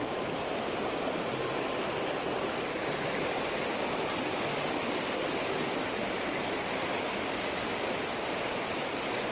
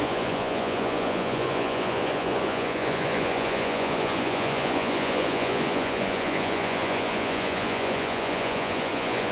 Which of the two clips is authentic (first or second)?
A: first